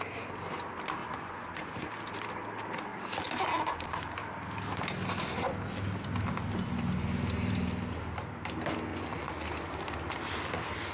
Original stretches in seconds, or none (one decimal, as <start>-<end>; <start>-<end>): 0.0-1.0; 1.9-8.9; 9.5-10.9